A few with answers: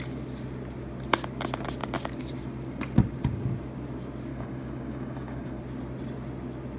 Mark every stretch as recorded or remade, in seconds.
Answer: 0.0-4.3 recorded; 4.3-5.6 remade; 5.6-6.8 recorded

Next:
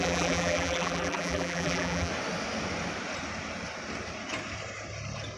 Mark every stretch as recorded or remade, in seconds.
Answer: 0.0-2.1 remade; 2.1-5.4 recorded

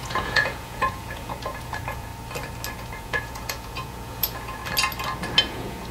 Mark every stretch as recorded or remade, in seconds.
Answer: 0.0-2.1 remade; 2.1-2.7 recorded; 2.7-4.6 remade; 4.6-5.4 recorded; 5.4-5.9 remade

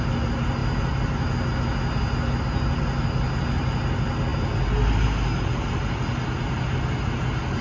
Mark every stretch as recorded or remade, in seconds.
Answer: 0.0-7.6 recorded

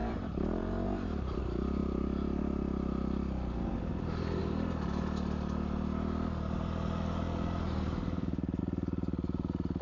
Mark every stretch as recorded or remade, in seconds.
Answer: 0.0-1.4 remade; 1.4-1.8 recorded; 1.8-2.4 remade; 2.4-9.8 recorded

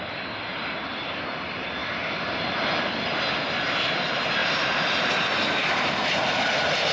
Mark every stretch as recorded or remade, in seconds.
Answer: 0.0-1.8 recorded; 1.8-2.5 remade; 2.5-4.4 recorded; 4.4-5.1 remade; 5.1-6.9 recorded

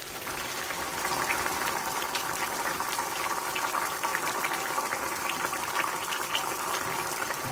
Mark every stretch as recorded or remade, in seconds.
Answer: 0.0-0.9 remade; 0.9-2.5 recorded; 2.5-7.5 remade